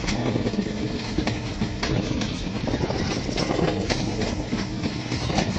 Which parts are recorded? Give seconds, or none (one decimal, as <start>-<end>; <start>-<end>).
2.6-3.4